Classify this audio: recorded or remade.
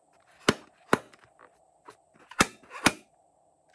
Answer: recorded